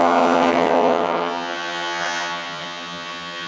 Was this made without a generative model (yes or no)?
no